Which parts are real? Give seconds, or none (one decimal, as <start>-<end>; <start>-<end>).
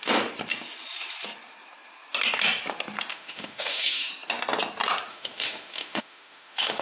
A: 0.0-3.1; 4.1-5.1